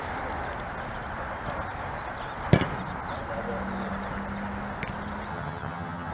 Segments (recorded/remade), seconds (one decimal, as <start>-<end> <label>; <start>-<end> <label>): 0.0-5.3 recorded; 5.3-6.1 remade